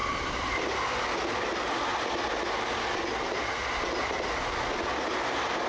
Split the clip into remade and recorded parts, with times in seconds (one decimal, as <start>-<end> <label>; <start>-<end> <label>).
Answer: 0.0-5.7 recorded